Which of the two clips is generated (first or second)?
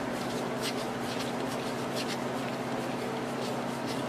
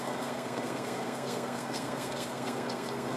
second